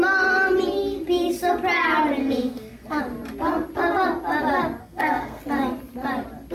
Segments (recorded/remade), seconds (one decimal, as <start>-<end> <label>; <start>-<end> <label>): 0.0-2.2 recorded; 2.2-3.0 remade; 3.0-4.8 recorded; 4.8-5.4 remade; 5.4-6.5 recorded